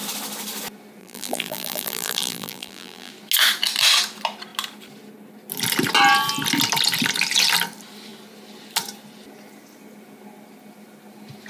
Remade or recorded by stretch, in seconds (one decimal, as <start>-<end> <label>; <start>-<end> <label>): 0.0-1.0 recorded; 1.0-3.1 remade; 3.1-11.5 recorded